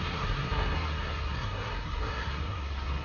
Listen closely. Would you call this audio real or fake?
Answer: fake